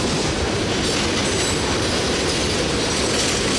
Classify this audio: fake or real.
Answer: real